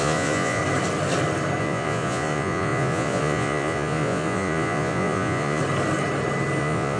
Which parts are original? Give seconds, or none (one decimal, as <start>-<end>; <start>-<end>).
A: 0.6-1.6; 5.6-6.6